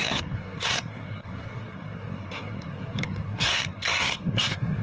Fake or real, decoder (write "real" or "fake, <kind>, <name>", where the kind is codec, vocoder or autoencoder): fake, codec, SNAC